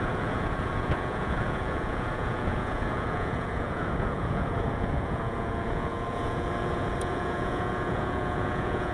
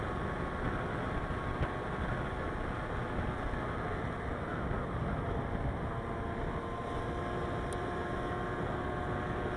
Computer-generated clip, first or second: first